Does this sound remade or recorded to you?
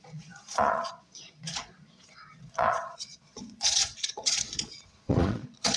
remade